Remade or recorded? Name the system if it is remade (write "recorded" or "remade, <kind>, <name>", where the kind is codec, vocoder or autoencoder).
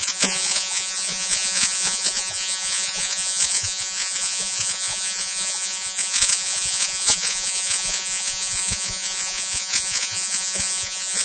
remade, vocoder, Vocos